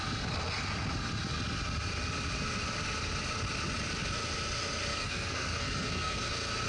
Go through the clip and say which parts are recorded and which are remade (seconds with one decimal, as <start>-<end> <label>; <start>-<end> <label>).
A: 0.0-4.9 recorded; 4.9-6.2 remade; 6.2-6.7 recorded